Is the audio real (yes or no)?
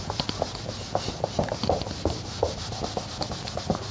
yes